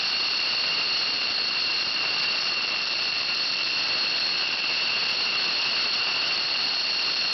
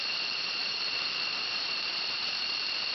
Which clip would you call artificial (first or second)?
second